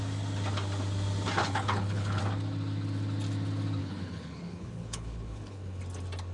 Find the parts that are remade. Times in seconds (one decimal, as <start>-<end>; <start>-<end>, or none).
1.4-2.2; 3.8-5.8